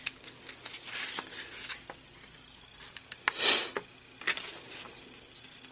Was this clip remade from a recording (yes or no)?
no